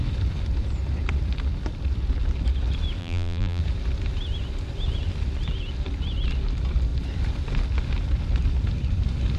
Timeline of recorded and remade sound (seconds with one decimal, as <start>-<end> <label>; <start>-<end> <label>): 0.0-3.0 recorded; 3.0-3.6 remade; 3.6-9.4 recorded